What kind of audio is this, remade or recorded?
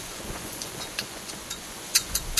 remade